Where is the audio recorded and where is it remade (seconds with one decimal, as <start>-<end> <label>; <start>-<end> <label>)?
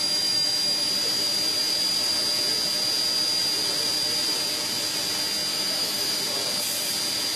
0.0-0.9 remade; 0.9-5.5 recorded; 5.5-6.2 remade; 6.2-7.4 recorded